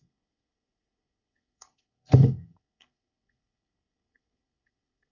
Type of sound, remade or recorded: remade